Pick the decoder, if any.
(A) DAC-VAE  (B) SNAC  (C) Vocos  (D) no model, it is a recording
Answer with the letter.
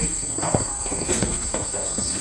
B